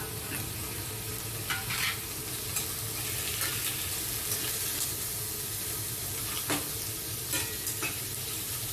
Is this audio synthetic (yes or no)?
no